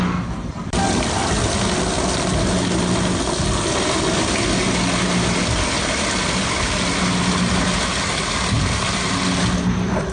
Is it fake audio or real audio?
real